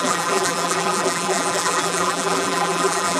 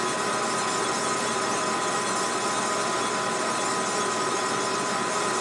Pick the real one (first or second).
second